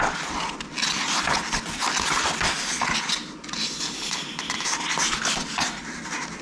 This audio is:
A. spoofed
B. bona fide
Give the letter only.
B